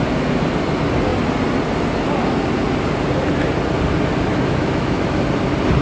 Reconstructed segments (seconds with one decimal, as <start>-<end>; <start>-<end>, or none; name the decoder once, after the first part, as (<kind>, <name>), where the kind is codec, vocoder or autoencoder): 4.3-5.2 (autoencoder, DAC-VAE)